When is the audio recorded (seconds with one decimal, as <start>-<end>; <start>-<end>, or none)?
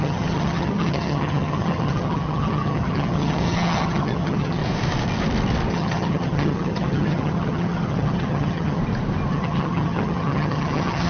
4.6-5.7; 8.8-9.3